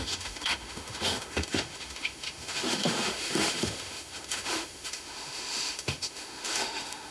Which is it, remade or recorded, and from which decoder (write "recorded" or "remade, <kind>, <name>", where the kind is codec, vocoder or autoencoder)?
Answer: remade, autoencoder, DAC-VAE